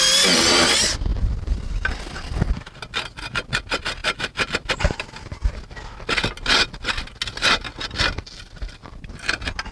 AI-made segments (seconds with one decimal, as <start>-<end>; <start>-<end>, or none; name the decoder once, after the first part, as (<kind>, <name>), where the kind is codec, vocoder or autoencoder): none